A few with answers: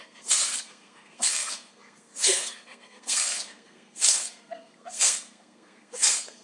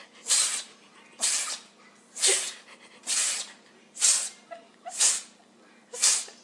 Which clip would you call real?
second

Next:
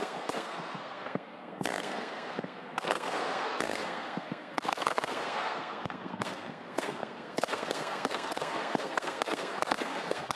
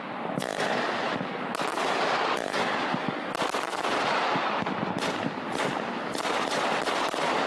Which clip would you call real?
second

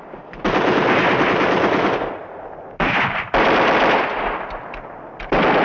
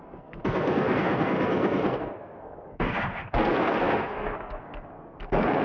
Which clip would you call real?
first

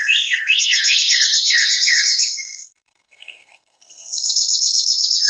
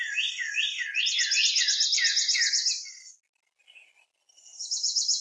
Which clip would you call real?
second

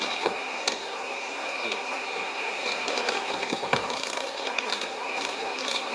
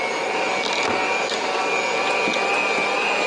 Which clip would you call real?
second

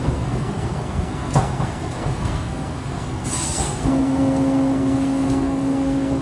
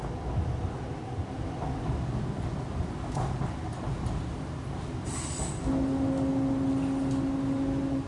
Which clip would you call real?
second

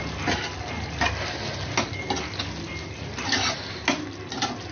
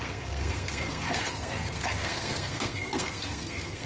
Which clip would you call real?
first